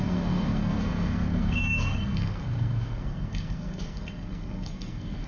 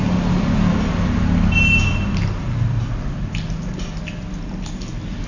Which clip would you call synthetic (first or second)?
first